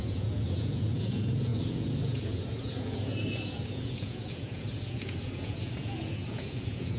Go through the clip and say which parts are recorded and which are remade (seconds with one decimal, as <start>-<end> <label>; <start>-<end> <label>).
0.0-7.0 remade